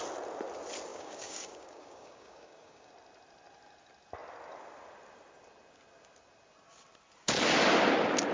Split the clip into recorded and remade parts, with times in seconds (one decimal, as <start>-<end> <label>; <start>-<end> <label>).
0.0-0.9 recorded; 0.9-2.9 remade; 2.9-8.3 recorded